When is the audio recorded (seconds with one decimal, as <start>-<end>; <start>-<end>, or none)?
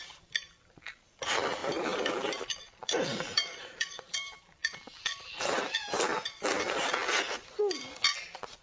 0.0-1.6; 5.6-8.6